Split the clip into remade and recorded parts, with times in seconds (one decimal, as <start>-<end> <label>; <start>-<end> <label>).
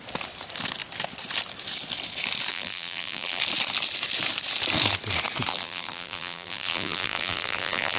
0.0-2.5 recorded; 2.5-3.4 remade; 3.4-5.5 recorded; 5.5-8.0 remade